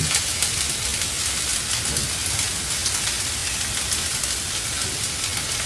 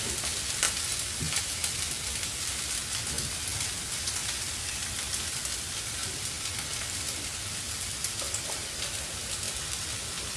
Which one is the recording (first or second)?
first